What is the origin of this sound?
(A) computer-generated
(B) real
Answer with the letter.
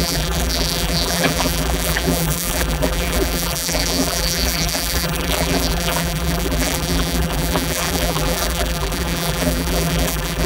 A